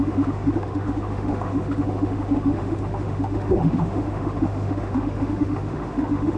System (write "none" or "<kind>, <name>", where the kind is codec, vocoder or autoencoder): autoencoder, DAC-VAE